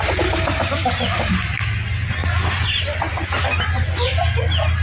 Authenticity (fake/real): real